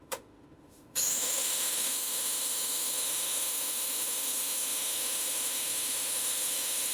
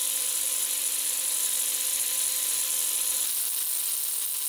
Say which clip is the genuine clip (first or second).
second